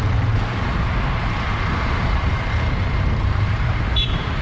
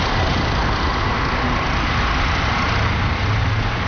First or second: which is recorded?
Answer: second